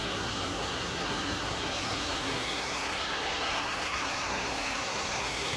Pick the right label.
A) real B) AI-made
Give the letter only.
B